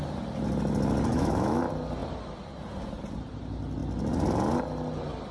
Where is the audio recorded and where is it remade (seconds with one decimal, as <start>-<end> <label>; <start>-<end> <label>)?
0.0-1.1 recorded; 1.1-1.6 remade; 1.6-5.3 recorded